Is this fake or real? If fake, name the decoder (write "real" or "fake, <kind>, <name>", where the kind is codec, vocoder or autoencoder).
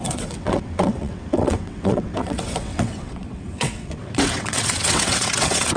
fake, vocoder, WaveNeXt